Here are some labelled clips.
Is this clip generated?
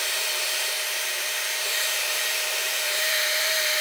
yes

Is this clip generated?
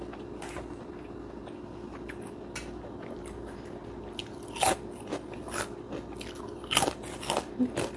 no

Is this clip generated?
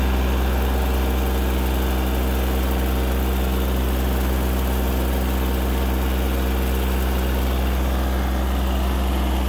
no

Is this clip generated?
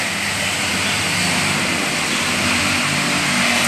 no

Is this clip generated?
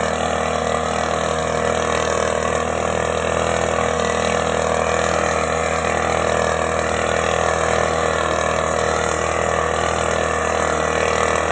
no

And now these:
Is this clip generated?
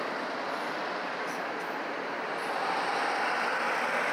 no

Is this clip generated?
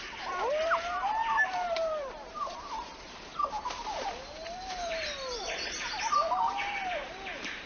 yes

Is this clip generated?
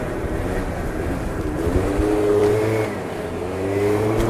yes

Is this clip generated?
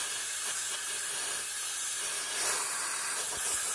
no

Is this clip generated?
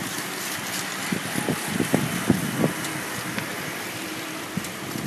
no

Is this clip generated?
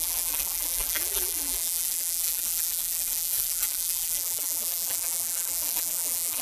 yes